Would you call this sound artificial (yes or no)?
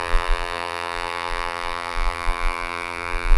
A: yes